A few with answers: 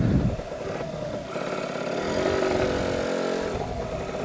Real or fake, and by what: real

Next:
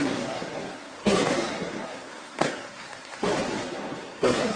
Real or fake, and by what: fake, codec, SNAC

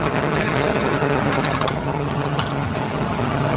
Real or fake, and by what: fake, vocoder, HiFi-GAN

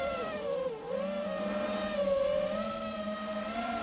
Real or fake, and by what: real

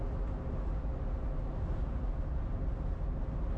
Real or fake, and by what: real